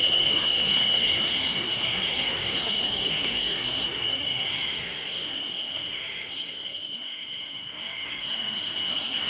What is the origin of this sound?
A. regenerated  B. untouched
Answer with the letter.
A